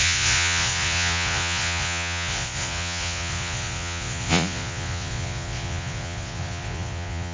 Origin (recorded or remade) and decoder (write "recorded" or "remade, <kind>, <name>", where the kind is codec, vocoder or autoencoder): remade, vocoder, Vocos